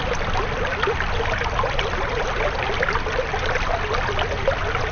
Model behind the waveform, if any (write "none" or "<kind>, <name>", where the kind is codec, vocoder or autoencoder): none